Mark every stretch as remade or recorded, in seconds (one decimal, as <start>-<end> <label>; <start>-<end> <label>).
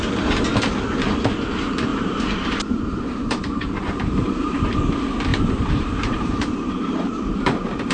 0.0-1.9 recorded; 1.9-4.8 remade; 4.8-5.3 recorded; 5.3-7.9 remade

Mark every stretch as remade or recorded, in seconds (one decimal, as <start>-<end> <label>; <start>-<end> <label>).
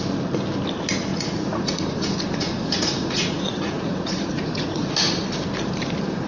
0.0-1.1 recorded; 1.1-4.9 remade; 4.9-6.3 recorded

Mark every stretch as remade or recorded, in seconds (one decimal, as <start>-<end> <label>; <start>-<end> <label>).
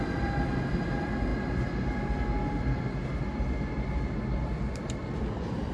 0.0-5.7 recorded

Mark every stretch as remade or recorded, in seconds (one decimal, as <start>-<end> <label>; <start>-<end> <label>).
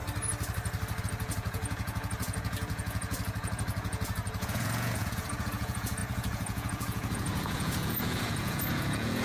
0.0-1.0 recorded; 1.0-9.2 remade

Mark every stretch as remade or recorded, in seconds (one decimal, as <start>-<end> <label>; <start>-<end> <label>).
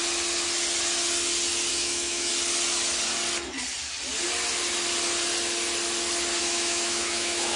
0.0-1.7 recorded; 1.7-2.3 remade; 2.3-6.4 recorded; 6.4-7.6 remade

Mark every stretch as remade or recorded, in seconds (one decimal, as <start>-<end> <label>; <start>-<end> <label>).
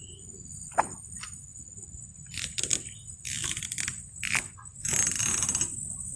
0.0-6.2 recorded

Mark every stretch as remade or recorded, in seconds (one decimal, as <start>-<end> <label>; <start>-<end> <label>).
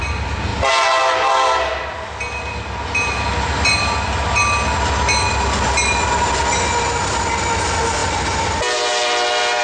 0.0-9.6 recorded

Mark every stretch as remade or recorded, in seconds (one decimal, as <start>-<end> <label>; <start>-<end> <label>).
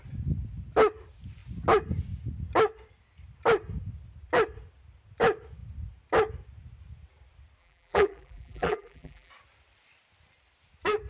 0.0-7.6 recorded; 7.6-9.3 remade; 9.3-11.1 recorded